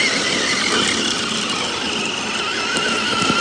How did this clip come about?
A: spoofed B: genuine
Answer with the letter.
B